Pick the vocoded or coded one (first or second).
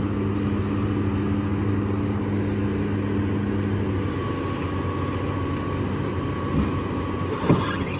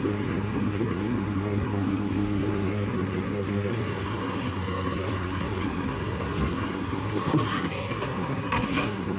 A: second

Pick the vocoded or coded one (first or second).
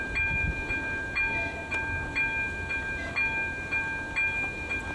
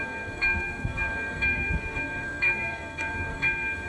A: second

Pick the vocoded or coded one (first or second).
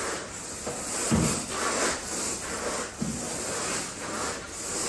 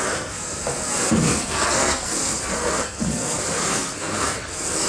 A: second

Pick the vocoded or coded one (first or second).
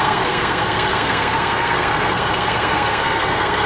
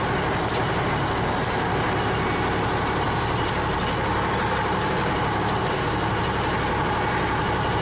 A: first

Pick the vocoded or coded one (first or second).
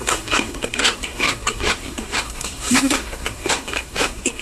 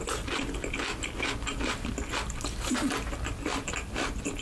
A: first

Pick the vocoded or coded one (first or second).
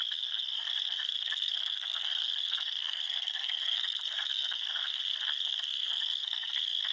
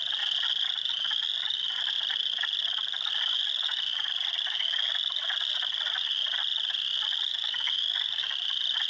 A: first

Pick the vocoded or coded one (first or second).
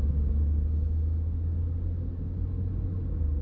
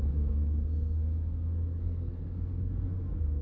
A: second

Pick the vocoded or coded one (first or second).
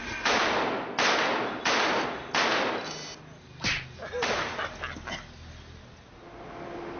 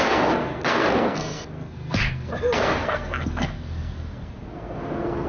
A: second